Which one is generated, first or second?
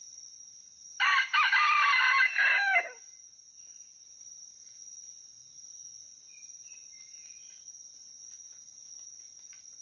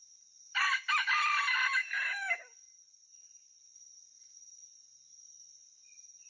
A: second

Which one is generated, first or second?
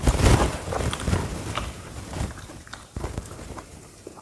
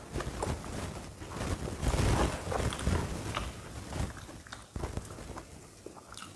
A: first